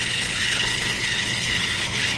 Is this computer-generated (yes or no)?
yes